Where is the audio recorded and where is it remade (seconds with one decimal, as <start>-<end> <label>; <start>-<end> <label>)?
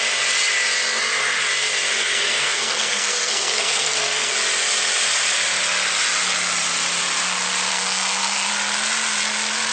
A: 0.0-2.0 recorded; 2.0-4.3 remade; 4.3-7.7 recorded; 7.7-8.5 remade; 8.5-9.7 recorded